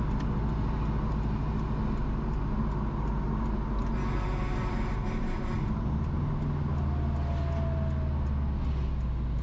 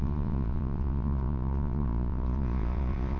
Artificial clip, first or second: second